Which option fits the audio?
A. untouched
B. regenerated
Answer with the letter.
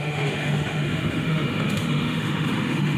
B